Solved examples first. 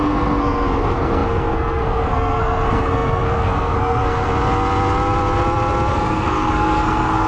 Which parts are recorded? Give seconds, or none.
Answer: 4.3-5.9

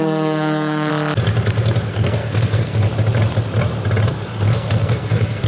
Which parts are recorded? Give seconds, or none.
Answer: 0.9-1.9; 2.9-4.1

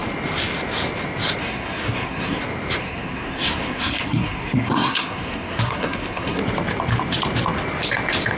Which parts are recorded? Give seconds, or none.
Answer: 0.0-1.4; 2.4-2.8; 6.4-8.4

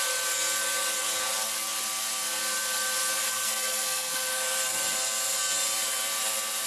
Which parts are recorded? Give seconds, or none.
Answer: 0.0-3.2; 4.1-6.7